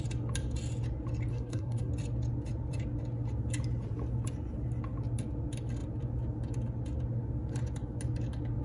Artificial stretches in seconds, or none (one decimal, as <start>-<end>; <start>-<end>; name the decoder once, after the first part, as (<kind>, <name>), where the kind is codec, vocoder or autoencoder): 1.3-1.9 (codec, SNAC)